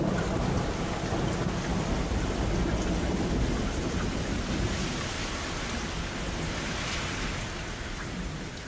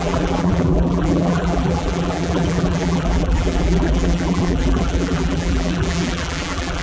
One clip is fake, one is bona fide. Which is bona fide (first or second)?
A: first